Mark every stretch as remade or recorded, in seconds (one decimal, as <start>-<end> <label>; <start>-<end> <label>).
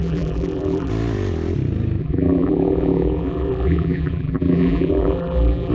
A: 0.0-0.9 remade; 0.9-2.0 recorded; 2.0-5.7 remade